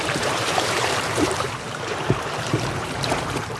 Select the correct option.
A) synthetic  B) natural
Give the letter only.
A